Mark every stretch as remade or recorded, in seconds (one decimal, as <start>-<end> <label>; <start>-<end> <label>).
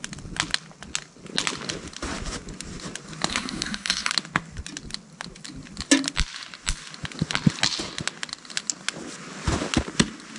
0.0-3.3 recorded; 3.3-4.1 remade; 4.1-10.4 recorded